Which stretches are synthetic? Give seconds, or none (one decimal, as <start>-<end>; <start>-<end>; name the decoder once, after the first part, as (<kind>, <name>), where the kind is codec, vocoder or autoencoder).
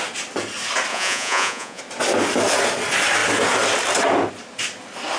0.9-1.8 (vocoder, Vocos)